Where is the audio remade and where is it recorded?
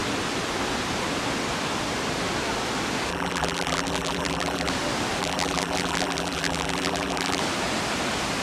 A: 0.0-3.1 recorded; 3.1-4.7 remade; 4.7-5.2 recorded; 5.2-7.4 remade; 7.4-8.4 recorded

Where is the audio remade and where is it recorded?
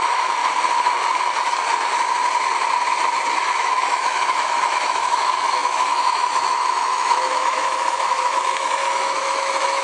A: 0.0-0.4 remade; 0.4-3.3 recorded; 3.3-9.8 remade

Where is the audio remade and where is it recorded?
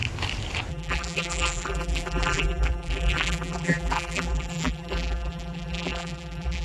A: 0.0-0.7 recorded; 0.7-6.6 remade